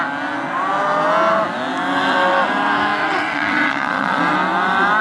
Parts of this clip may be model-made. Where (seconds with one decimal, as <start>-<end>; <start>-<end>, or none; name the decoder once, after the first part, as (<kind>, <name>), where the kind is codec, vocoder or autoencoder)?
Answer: 3.0-4.2 (vocoder, WaveNeXt)